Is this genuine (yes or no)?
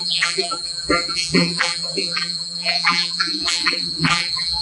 no